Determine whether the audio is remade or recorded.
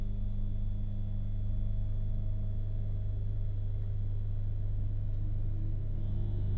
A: recorded